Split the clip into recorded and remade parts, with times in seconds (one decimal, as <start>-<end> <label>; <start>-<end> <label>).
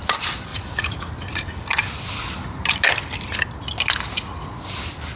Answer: 0.0-0.5 recorded; 0.5-1.1 remade; 1.1-5.2 recorded